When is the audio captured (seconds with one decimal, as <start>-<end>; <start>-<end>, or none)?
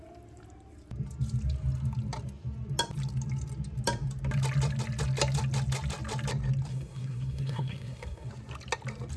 0.0-6.7; 8.3-9.2